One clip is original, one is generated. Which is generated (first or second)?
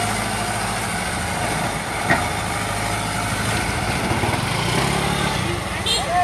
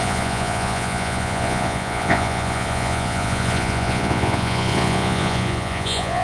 second